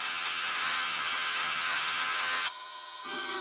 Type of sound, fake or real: fake